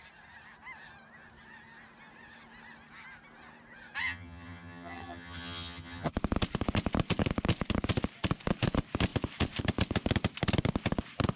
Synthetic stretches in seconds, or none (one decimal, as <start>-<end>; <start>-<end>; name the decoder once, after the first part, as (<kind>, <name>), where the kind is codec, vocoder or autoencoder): 4.0-6.1 (vocoder, HiFi-GAN)